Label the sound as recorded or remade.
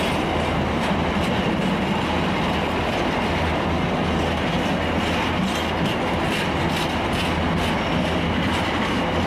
recorded